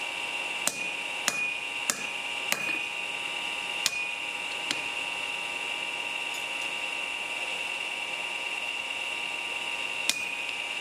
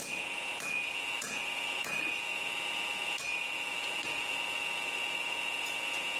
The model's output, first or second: second